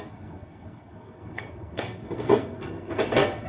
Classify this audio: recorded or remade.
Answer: remade